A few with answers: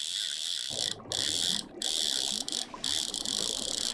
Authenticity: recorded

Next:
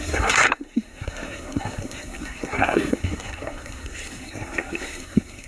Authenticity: remade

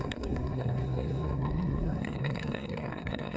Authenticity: remade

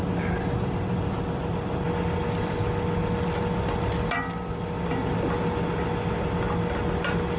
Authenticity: recorded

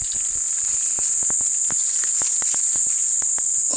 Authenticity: recorded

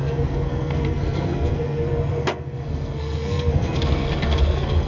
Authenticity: remade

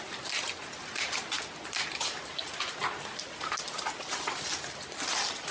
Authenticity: recorded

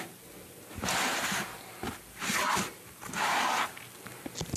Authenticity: recorded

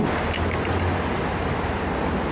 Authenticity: recorded